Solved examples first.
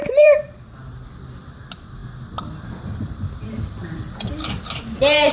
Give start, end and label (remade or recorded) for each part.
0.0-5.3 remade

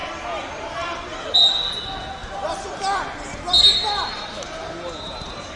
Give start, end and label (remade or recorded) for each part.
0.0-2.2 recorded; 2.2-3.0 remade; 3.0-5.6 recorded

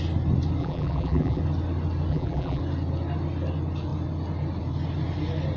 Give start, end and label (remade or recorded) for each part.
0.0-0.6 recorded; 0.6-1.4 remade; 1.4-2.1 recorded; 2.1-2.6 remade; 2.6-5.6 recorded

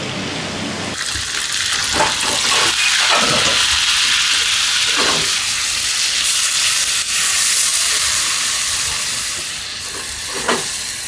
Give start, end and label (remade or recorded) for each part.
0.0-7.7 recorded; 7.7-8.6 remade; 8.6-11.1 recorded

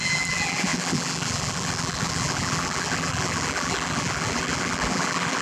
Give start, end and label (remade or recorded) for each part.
0.0-5.4 remade

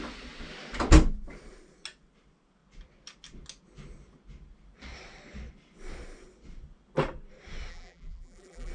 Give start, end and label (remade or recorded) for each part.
0.0-7.7 recorded; 7.7-8.7 remade

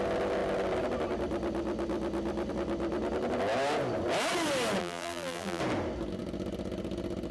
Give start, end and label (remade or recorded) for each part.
0.0-4.8 recorded; 4.8-5.6 remade; 5.6-7.3 recorded

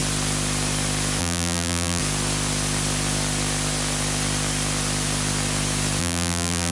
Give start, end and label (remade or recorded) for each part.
0.0-1.2 recorded; 1.2-2.0 remade; 2.0-6.0 recorded; 6.0-6.7 remade